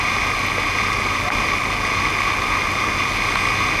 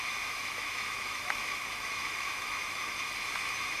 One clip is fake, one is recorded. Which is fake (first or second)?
second